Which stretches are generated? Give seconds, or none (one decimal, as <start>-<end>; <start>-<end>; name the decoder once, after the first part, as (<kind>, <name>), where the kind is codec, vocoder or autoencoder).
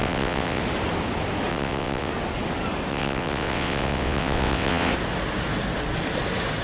0.0-0.6 (vocoder, WaveNeXt); 1.5-2.1; 2.9-4.9